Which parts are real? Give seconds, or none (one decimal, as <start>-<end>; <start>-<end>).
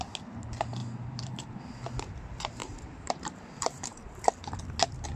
0.0-0.8; 1.6-2.6; 4.3-5.2